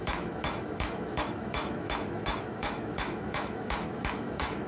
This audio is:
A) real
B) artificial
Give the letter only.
B